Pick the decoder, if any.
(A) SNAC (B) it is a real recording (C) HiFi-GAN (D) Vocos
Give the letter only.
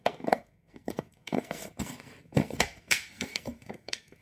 A